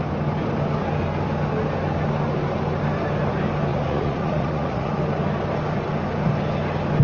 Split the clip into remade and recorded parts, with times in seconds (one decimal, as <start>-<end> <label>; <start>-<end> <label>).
0.0-3.7 recorded; 3.7-5.0 remade; 5.0-7.0 recorded